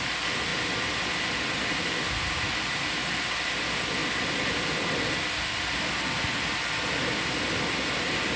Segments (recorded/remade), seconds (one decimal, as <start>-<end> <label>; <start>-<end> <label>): 0.0-8.4 recorded